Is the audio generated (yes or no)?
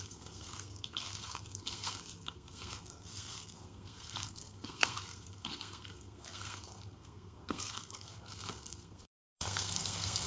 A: yes